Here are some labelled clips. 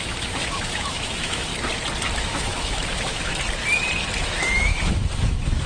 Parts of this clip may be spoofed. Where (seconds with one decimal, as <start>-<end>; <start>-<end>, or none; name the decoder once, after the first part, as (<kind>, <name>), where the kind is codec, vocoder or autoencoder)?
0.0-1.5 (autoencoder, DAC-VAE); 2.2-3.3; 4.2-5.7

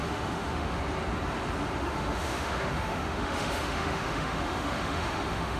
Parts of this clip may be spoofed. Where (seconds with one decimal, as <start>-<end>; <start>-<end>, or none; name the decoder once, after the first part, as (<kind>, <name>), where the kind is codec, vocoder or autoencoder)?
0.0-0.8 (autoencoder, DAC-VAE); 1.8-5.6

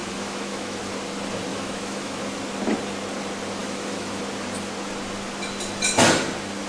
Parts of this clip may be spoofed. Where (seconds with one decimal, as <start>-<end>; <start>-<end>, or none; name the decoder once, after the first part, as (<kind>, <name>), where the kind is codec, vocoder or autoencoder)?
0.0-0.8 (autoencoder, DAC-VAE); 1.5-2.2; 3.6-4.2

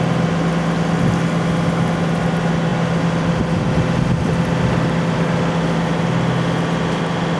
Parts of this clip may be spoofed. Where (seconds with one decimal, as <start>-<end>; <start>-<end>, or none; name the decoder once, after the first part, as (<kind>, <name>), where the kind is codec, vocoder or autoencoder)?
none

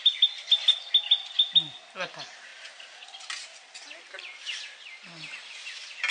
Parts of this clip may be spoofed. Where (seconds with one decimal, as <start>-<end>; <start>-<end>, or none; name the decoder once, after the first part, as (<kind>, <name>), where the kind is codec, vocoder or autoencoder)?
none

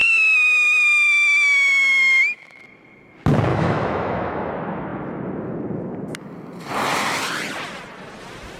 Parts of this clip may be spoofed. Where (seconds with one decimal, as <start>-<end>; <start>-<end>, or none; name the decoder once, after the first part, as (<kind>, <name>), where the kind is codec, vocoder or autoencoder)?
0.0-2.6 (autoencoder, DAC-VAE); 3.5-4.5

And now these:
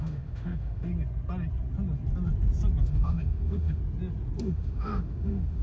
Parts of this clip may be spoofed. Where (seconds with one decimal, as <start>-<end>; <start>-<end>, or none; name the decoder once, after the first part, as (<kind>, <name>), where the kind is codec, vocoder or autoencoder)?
0.0-0.9 (autoencoder, DAC-VAE); 2.8-3.8; 4.4-5.6

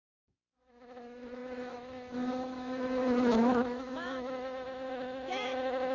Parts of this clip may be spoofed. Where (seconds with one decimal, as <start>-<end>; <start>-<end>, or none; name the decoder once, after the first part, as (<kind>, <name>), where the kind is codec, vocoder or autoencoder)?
0.0-5.9 (autoencoder, DAC-VAE)